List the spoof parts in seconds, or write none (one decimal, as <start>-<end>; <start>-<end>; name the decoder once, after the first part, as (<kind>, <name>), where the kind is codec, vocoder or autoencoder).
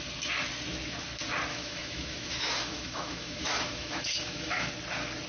1.5-4.7 (autoencoder, DAC-VAE)